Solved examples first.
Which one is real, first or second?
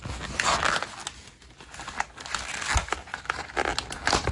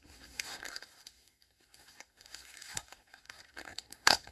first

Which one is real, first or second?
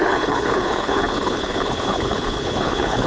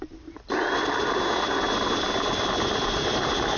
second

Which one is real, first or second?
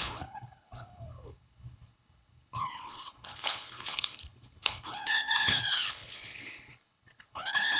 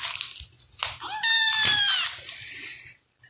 second